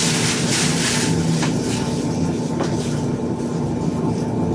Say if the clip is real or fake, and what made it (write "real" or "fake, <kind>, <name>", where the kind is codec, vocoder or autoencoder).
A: real